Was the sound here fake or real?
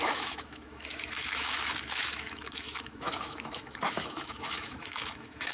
fake